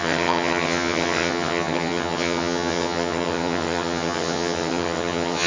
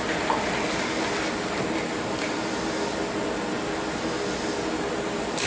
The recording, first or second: second